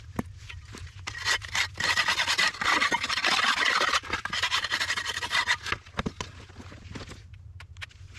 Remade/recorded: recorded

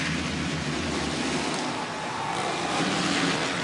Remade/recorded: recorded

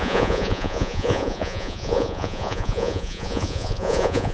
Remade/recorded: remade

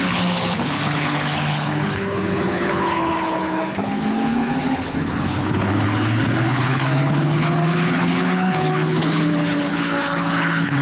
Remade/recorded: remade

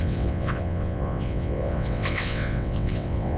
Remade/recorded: remade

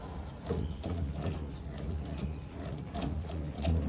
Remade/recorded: remade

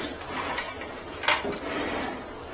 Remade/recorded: recorded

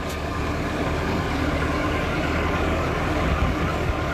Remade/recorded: remade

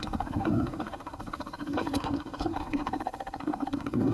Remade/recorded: remade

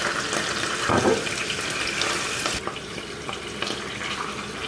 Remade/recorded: recorded